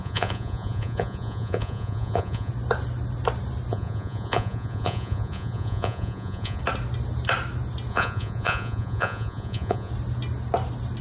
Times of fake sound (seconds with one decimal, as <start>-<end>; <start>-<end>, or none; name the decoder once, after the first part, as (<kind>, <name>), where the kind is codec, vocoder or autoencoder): 0.0-2.5 (vocoder, Vocos); 3.7-6.6; 7.9-9.9